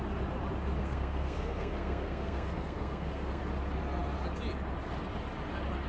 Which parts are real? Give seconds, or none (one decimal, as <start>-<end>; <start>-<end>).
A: 0.0-0.8; 3.4-5.9